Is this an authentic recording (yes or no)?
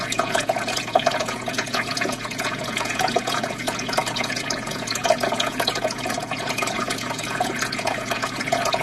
no